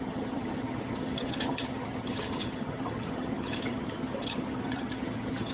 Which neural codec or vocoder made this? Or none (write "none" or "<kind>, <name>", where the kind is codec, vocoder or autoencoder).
vocoder, HiFi-GAN